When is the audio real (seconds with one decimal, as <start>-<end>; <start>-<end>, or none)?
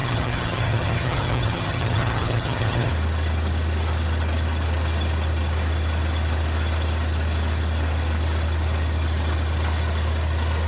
2.9-10.7